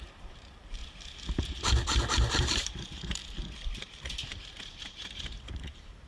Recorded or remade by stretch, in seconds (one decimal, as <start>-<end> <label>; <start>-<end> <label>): 0.0-0.8 remade; 0.8-2.4 recorded; 2.4-3.2 remade; 3.2-4.0 recorded; 4.0-6.1 remade